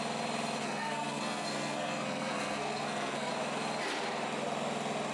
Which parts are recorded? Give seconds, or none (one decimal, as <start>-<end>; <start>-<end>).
0.0-0.6; 3.3-5.1